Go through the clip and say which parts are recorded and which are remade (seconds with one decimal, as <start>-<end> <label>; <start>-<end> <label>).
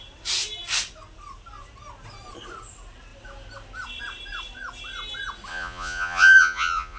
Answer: 0.0-5.5 recorded; 5.5-7.0 remade